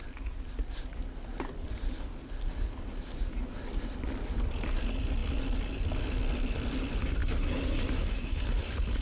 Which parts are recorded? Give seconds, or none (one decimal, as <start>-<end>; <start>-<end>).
0.0-7.2